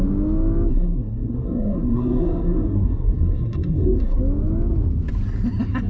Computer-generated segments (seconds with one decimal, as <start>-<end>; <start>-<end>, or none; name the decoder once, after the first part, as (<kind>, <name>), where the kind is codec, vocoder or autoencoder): 0.7-4.2 (codec, SNAC)